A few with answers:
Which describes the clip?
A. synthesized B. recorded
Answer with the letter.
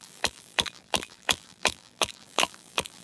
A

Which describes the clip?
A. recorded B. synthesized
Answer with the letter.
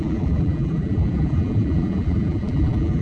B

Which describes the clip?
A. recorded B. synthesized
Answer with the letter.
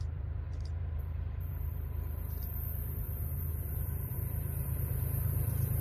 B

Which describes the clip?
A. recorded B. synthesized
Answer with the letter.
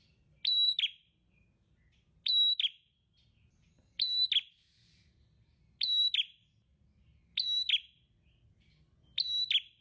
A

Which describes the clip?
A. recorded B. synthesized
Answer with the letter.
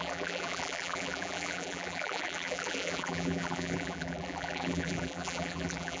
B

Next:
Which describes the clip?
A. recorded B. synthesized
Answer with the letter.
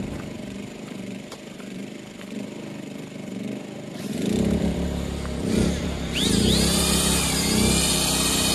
B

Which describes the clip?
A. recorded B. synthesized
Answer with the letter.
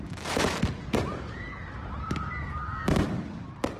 B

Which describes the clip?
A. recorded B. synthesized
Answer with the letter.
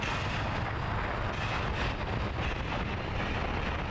A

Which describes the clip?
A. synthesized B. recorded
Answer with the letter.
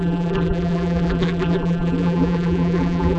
A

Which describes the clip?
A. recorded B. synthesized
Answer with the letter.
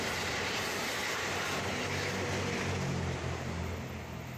A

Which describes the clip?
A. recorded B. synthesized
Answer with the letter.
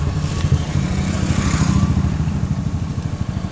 B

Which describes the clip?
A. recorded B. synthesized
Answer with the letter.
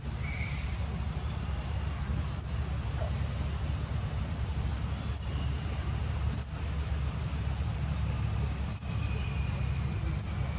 B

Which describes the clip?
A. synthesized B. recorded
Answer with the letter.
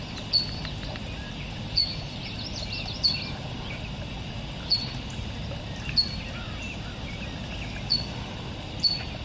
B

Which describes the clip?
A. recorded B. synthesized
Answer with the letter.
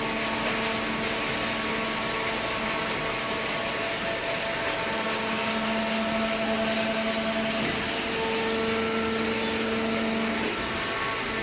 A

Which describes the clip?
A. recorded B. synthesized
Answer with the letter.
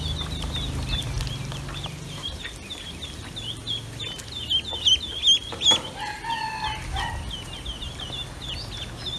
A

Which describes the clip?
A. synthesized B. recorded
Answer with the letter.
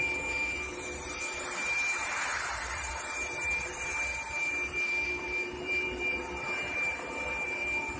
A